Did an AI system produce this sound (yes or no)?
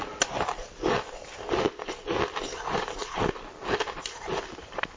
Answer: no